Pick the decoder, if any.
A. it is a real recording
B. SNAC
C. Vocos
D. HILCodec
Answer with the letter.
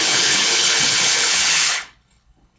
D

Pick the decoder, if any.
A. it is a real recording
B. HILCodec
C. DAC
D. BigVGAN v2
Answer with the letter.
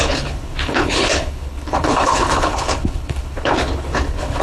B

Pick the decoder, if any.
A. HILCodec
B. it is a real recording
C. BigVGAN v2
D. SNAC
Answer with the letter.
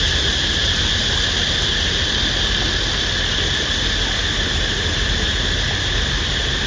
B